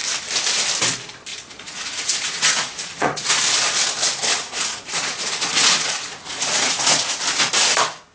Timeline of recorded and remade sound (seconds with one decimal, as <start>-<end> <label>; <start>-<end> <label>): 0.0-1.3 recorded; 1.3-3.4 remade; 3.4-4.3 recorded; 4.3-7.2 remade; 7.2-8.1 recorded